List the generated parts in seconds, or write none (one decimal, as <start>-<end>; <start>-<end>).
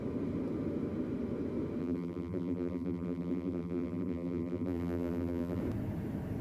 1.8-5.6